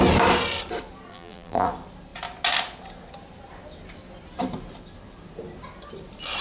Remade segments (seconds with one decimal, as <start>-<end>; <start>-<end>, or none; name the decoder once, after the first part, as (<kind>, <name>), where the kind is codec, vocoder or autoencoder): 1.1-1.7 (vocoder, BigVGAN v2)